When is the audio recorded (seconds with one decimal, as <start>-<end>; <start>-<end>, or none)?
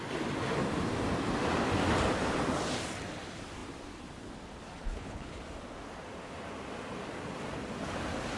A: 0.0-4.8; 5.4-8.4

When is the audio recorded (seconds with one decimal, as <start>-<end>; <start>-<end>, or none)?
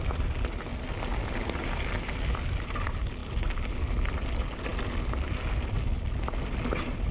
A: 0.0-7.1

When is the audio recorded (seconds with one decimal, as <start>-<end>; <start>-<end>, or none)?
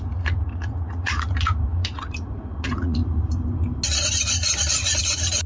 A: 3.0-5.0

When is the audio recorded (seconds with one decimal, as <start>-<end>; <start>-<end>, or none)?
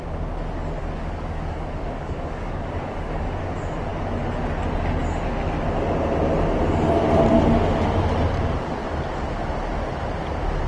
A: 0.0-0.8; 3.3-10.7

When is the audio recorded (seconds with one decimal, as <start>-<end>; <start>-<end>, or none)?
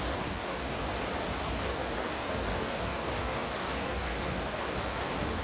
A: 0.9-1.4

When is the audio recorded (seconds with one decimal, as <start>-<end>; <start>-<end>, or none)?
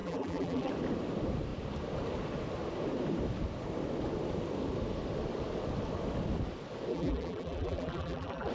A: 0.7-6.9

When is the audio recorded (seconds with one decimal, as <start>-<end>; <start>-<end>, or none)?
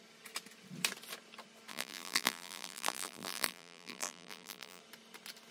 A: 0.0-1.7; 4.8-5.5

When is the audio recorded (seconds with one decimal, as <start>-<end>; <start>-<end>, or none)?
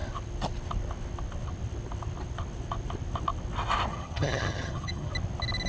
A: 0.0-3.9; 5.1-5.7